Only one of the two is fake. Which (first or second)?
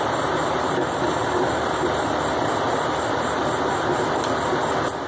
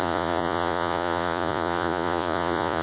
second